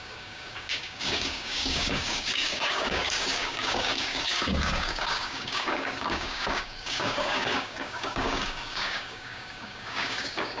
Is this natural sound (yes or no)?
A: no